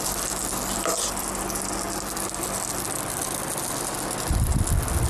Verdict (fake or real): real